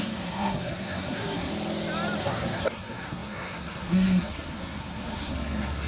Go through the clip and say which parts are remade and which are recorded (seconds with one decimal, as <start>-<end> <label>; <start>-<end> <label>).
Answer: 0.0-1.5 remade; 1.5-2.2 recorded; 2.2-5.9 remade